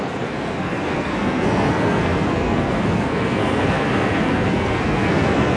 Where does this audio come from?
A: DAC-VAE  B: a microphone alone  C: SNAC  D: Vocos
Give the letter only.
C